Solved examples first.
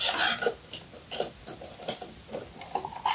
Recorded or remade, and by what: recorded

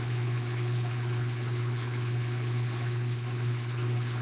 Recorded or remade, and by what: remade, codec, HILCodec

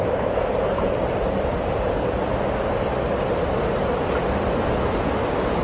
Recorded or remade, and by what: recorded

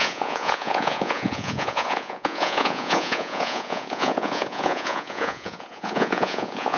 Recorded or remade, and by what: remade, vocoder, Vocos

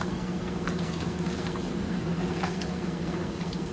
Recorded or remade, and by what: remade, codec, SNAC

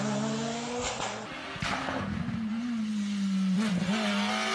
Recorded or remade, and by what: recorded